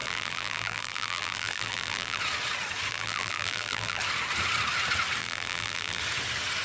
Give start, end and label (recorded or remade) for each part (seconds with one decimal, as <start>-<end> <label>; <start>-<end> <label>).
0.0-2.2 remade; 2.2-2.9 recorded; 2.9-4.0 remade; 4.0-5.2 recorded; 5.2-6.0 remade; 6.0-6.6 recorded